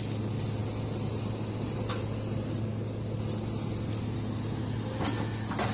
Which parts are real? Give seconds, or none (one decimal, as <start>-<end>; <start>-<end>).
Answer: 0.0-5.7